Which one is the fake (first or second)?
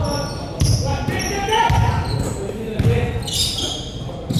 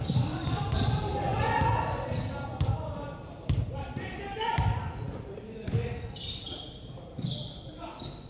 second